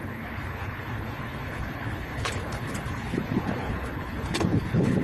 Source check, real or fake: fake